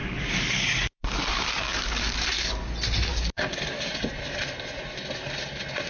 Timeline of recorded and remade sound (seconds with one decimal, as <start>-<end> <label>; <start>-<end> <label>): 0.0-2.7 remade; 2.7-3.1 recorded; 3.1-3.9 remade; 3.9-5.9 recorded